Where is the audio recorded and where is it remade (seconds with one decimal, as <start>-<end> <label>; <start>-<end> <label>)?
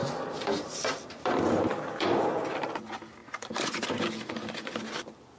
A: 0.0-2.7 remade; 2.7-3.2 recorded; 3.2-4.9 remade; 4.9-5.4 recorded